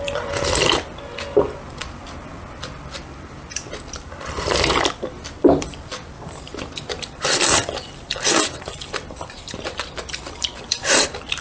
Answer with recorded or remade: remade